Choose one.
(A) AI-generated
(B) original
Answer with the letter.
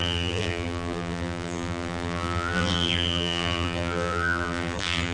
A